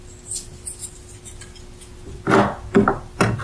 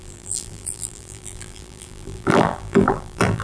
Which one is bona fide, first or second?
first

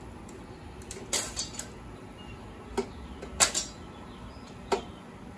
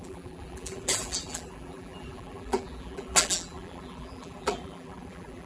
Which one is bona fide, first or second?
first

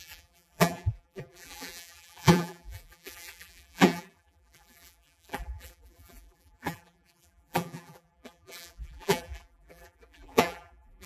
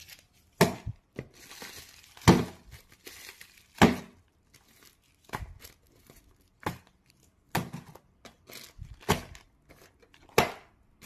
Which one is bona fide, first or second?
second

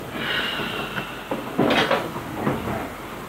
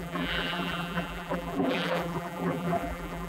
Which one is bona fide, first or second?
first